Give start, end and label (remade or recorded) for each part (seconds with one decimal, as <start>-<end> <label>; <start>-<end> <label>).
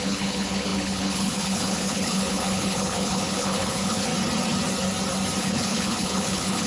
0.0-4.1 remade; 4.1-5.4 recorded; 5.4-6.7 remade